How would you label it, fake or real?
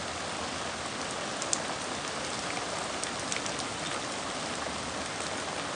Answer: real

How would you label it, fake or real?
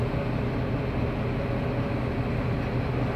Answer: real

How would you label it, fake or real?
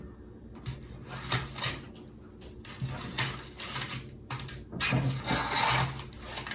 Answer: real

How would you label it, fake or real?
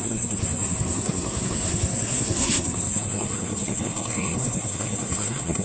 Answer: fake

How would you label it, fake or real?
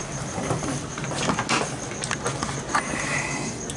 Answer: real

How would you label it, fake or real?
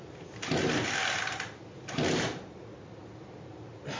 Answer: real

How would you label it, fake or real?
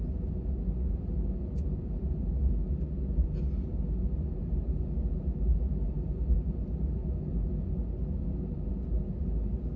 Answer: real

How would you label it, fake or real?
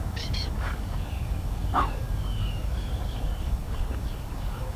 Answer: fake